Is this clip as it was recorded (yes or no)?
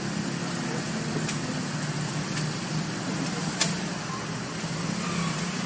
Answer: yes